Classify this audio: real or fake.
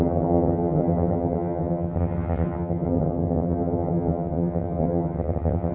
fake